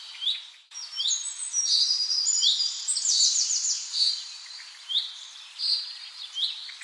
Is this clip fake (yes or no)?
yes